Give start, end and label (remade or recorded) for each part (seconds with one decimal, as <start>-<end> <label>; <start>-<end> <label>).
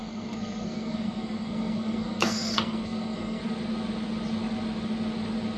0.0-3.4 remade; 3.4-5.6 recorded